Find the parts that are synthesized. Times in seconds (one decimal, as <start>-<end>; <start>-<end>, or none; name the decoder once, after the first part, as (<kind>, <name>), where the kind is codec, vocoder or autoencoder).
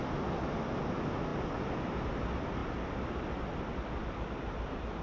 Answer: none